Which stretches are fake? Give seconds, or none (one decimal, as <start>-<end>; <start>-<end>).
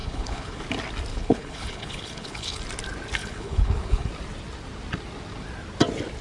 0.0-0.6; 1.1-2.6; 3.2-4.1